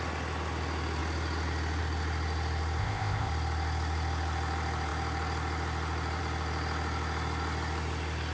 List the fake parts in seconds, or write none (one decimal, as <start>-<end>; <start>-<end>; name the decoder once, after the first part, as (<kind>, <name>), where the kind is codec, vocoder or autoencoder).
2.8-3.3 (codec, ZipCodec)